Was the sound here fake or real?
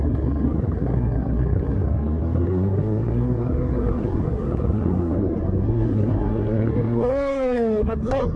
fake